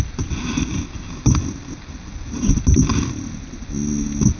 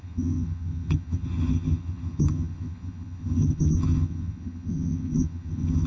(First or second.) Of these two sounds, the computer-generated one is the second